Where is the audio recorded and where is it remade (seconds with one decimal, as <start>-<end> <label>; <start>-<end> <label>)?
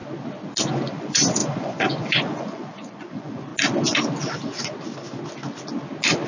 0.0-0.7 recorded; 0.7-3.5 remade; 3.5-6.3 recorded